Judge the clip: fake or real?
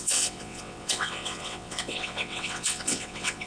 fake